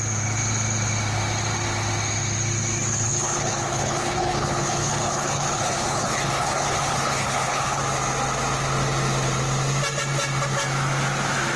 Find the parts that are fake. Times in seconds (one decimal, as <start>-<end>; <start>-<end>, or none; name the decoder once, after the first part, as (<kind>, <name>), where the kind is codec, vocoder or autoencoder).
2.9-7.8 (codec, HILCodec)